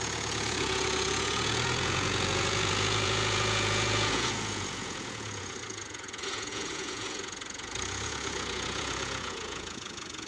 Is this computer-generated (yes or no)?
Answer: yes